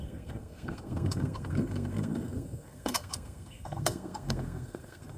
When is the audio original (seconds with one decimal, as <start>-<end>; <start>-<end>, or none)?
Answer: none